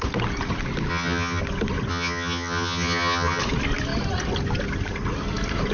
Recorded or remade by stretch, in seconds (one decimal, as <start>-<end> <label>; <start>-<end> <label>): 0.0-0.9 recorded; 0.9-1.4 remade; 1.4-1.9 recorded; 1.9-3.4 remade; 3.4-5.7 recorded